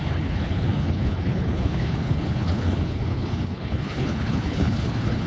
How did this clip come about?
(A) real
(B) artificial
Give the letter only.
B